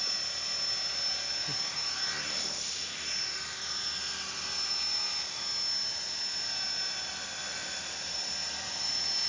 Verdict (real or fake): real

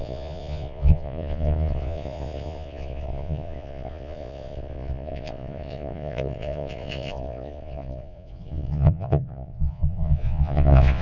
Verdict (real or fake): fake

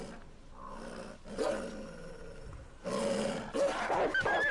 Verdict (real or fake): real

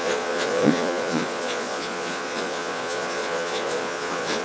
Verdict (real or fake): fake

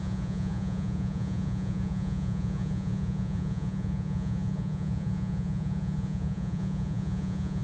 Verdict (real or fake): fake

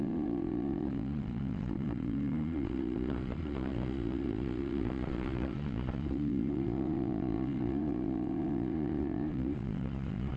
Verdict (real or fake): fake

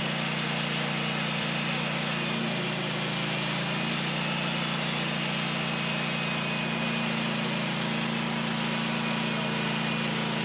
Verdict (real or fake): real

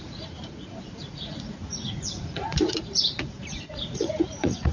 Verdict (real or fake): fake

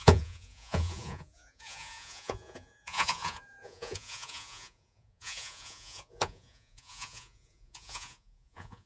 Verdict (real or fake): fake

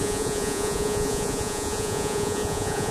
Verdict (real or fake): fake